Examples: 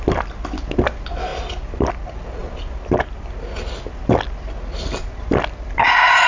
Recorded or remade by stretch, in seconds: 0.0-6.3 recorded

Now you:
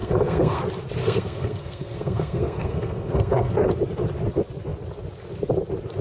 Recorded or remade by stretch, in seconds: 0.0-0.6 remade; 0.6-1.0 recorded; 1.0-3.7 remade; 3.7-6.0 recorded

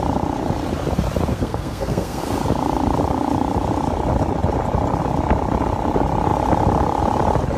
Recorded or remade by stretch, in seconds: 0.0-1.3 recorded; 1.3-2.2 remade; 2.2-7.6 recorded

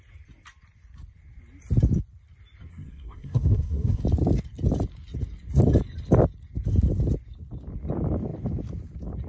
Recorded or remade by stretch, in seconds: 0.0-2.7 recorded; 2.7-4.0 remade; 4.0-9.3 recorded

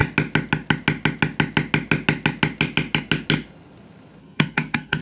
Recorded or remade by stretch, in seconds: 0.0-4.2 recorded; 4.2-5.0 remade

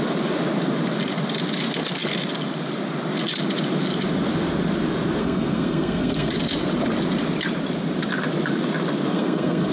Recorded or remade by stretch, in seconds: 0.0-5.2 recorded; 5.2-6.3 remade; 6.3-9.1 recorded; 9.1-9.7 remade

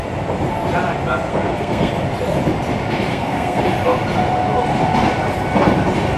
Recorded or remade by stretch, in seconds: 0.0-1.3 recorded; 1.3-1.9 remade; 1.9-3.1 recorded; 3.1-3.6 remade; 3.6-6.2 recorded

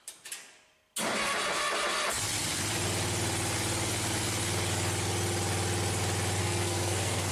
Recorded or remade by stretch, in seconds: 0.0-6.4 recorded; 6.4-7.3 remade